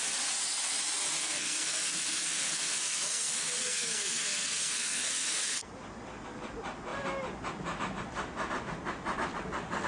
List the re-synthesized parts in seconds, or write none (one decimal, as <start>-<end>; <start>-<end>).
1.2-5.7